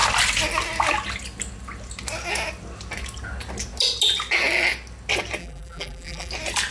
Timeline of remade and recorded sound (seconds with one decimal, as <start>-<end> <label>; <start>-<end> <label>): 0.0-5.4 recorded; 5.4-6.3 remade; 6.3-6.7 recorded